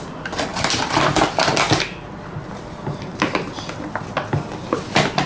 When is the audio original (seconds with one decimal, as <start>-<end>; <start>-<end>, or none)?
0.0-5.3